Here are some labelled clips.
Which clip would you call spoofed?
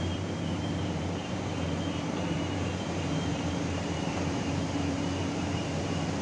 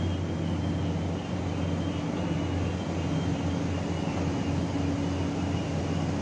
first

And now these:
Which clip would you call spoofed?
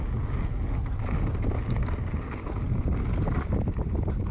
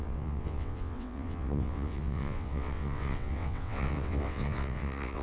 second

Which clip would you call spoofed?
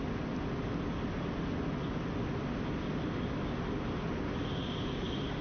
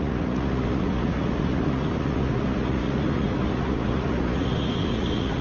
second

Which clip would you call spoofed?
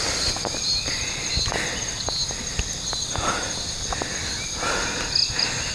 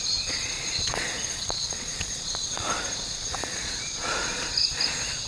second